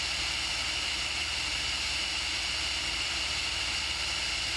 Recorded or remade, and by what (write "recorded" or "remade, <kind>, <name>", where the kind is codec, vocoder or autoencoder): recorded